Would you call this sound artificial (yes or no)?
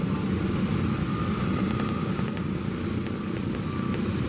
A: no